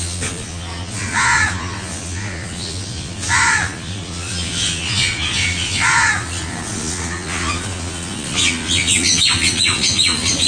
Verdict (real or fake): fake